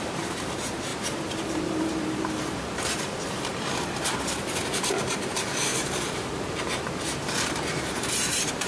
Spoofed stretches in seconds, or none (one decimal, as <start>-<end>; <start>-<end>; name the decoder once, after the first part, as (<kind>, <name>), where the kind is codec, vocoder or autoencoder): 0.0-8.7 (vocoder, BigVGAN v2)